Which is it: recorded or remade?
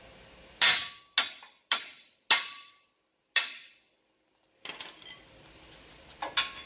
recorded